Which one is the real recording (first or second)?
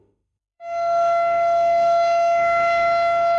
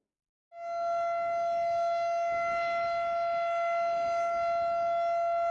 second